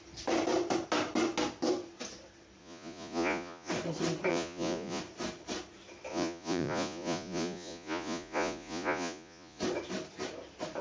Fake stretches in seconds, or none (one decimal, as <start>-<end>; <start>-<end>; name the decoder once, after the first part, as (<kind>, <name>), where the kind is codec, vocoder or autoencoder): 2.6-3.7 (vocoder, Vocos); 4.3-5.0; 6.1-9.6